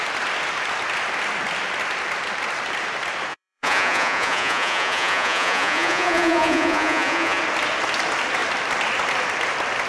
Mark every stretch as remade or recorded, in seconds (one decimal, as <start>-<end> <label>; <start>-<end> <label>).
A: 0.0-3.3 recorded; 3.3-7.4 remade; 7.4-9.9 recorded